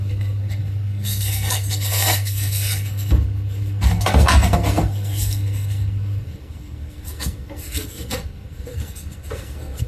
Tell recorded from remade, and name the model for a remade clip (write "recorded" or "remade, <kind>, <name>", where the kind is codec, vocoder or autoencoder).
remade, codec, SNAC